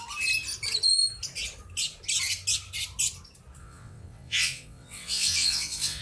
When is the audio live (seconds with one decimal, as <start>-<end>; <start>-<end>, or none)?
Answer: 0.0-3.6